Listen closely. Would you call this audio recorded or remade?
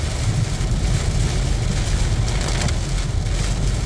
recorded